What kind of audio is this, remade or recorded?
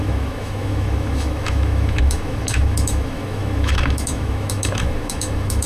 remade